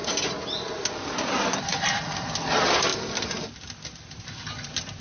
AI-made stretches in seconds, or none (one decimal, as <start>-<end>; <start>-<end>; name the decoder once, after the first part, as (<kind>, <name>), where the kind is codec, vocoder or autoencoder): 0.0-2.9 (vocoder, BigVGAN v2); 4.5-5.0